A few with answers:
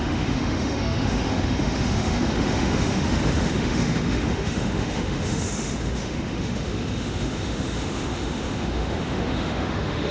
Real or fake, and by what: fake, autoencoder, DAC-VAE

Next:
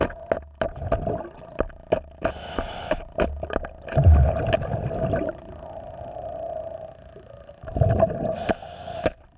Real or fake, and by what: real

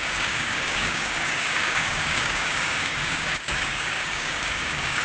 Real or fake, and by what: fake, codec, DAC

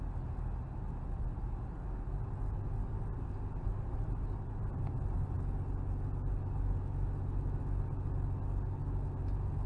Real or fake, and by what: real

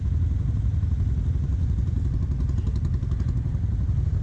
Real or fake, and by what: real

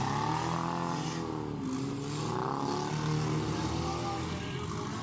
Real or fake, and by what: real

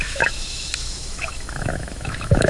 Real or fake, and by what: fake, autoencoder, DAC-VAE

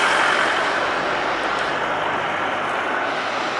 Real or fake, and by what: real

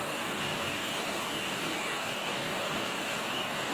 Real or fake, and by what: fake, codec, DAC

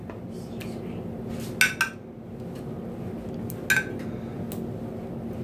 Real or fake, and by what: real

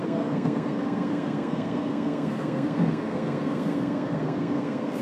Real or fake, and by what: fake, codec, SNAC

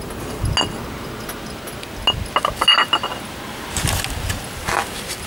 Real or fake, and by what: real